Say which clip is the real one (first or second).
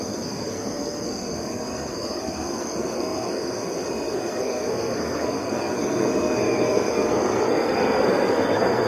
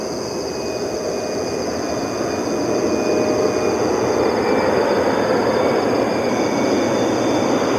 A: second